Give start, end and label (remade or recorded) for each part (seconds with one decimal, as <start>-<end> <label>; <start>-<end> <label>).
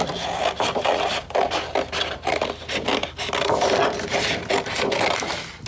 0.0-5.7 recorded